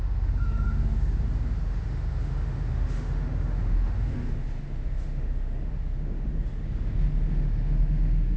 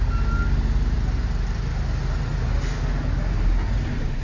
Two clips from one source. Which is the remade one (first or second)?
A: first